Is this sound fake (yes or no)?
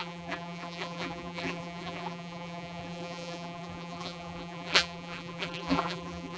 yes